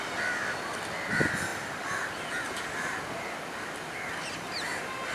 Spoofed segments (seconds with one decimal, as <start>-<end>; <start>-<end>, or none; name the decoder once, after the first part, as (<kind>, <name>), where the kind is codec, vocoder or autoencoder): none